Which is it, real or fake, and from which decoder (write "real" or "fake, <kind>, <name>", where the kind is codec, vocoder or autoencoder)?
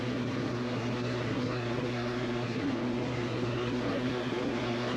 fake, codec, SNAC